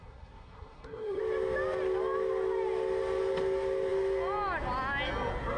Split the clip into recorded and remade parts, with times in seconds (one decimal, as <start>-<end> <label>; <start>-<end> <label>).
0.0-1.2 remade; 1.2-5.6 recorded